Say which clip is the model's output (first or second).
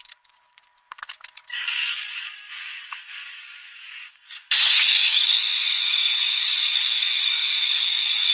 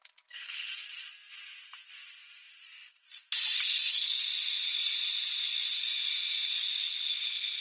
first